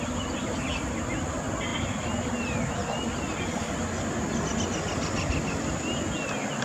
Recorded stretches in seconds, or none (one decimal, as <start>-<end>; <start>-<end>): 0.0-6.6

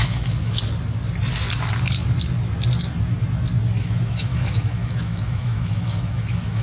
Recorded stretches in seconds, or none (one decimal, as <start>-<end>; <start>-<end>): 0.6-3.8